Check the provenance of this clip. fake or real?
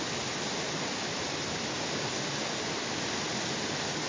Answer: real